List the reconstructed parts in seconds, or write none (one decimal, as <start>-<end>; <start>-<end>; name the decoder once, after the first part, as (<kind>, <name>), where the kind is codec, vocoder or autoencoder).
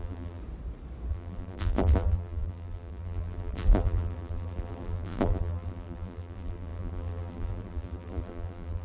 0.0-0.4 (vocoder, BigVGAN v2); 1.1-8.8